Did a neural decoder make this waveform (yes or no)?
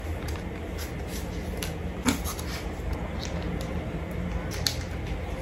no